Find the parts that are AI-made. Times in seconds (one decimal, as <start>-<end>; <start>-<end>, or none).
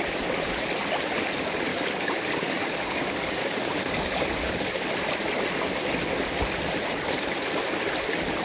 1.7-4.8